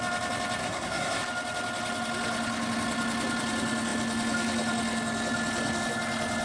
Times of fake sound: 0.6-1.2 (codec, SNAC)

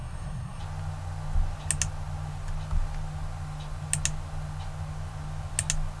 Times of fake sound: 0.0-0.6 (codec, SNAC)

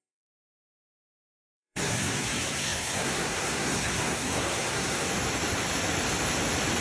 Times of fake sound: 0.0-5.1 (codec, SNAC)